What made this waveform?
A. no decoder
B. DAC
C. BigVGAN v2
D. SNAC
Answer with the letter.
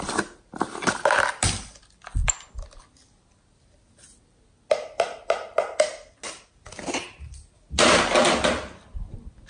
A